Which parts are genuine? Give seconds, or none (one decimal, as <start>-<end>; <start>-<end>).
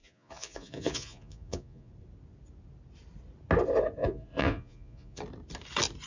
1.9-4.0; 5.2-6.1